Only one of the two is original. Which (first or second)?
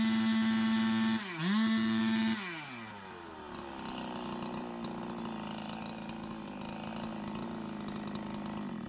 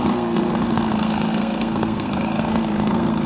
first